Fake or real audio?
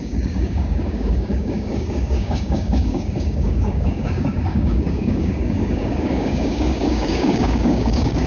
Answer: fake